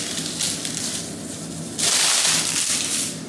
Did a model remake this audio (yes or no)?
no